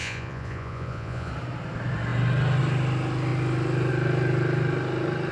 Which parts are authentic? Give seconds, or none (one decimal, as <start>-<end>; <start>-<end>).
1.3-5.3